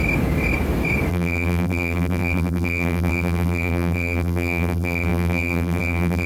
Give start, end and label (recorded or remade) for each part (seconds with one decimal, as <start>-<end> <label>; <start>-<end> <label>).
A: 0.0-1.1 recorded; 1.1-6.3 remade